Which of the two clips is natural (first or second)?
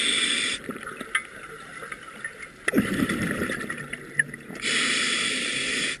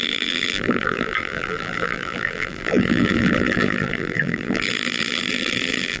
first